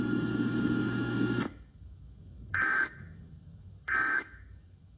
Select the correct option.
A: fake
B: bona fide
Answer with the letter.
A